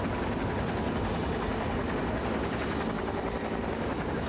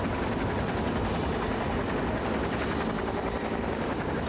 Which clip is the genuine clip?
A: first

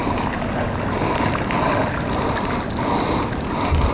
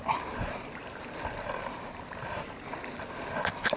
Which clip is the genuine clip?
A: first